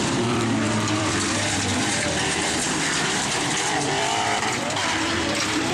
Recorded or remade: remade